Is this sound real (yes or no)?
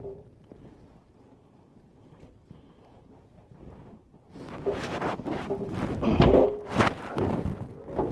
yes